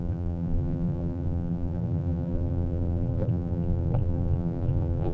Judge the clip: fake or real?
fake